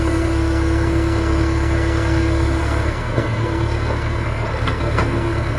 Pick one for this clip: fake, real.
fake